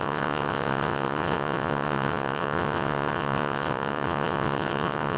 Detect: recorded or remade remade